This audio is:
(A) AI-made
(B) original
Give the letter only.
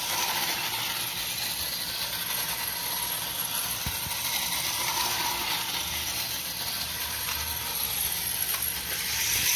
B